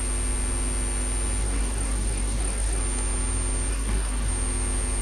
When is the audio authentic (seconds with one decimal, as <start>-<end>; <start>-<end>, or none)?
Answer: 0.0-1.4; 2.8-3.7; 4.3-5.0